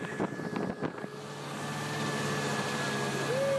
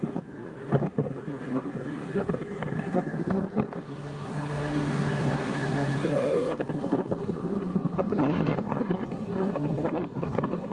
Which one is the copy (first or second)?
second